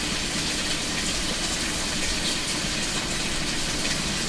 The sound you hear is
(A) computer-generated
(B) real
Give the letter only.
B